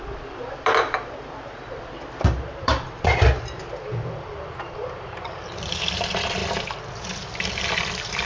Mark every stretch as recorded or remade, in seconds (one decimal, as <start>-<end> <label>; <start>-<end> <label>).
0.0-6.4 remade; 6.4-7.4 recorded; 7.4-8.3 remade